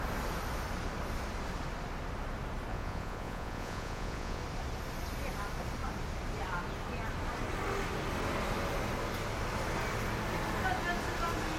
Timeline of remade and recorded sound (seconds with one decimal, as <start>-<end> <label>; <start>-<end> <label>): 0.0-2.7 recorded; 2.7-4.4 remade; 4.4-11.6 recorded